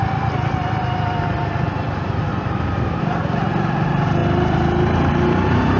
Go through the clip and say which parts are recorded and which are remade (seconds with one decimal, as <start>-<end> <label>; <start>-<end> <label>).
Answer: 0.0-2.3 recorded; 2.3-3.0 remade; 3.0-5.8 recorded